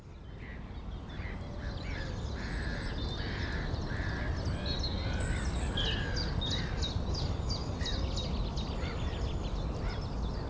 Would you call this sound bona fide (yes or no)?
yes